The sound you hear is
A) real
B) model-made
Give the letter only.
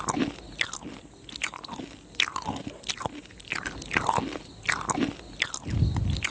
A